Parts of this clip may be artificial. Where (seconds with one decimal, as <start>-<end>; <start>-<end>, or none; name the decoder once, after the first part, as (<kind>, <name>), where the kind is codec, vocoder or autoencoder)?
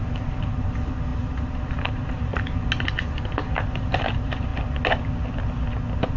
0.0-2.3 (vocoder, BigVGAN v2); 3.0-4.5